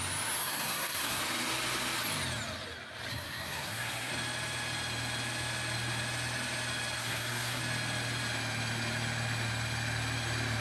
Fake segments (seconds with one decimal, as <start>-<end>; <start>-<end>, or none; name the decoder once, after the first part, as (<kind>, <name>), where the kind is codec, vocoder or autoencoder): 0.4-1.2 (codec, SNAC); 3.1-4.1; 7.0-7.6